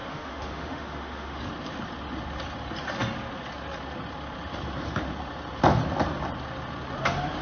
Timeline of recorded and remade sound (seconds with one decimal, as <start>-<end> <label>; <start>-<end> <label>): 0.0-1.4 remade; 1.4-7.4 recorded